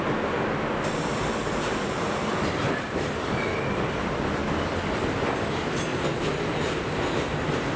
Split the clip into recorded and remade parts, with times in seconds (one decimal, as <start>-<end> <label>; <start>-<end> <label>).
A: 0.0-5.9 remade; 5.9-7.8 recorded